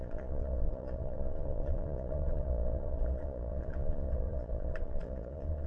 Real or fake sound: fake